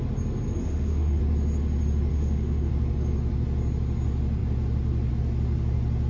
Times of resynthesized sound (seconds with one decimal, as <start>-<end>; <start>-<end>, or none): 0.6-1.2; 2.1-2.7